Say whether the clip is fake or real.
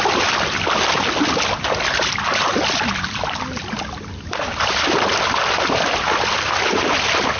real